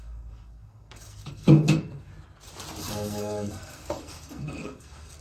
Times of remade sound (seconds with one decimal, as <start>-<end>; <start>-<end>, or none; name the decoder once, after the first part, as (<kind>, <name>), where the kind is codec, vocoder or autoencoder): 0.0-2.1 (codec, SNAC); 2.8-5.2